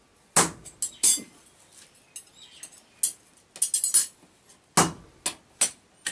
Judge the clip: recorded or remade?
recorded